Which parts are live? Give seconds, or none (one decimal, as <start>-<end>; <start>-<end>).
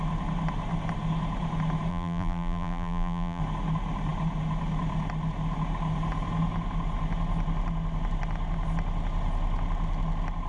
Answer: 0.0-1.9; 3.4-10.5